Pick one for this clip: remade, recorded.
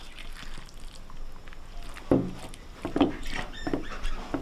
recorded